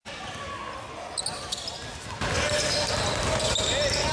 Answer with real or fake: real